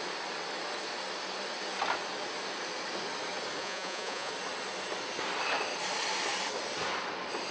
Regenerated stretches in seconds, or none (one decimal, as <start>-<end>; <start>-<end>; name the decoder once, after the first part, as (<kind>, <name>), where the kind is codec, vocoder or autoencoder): 3.6-4.3 (vocoder, Vocos)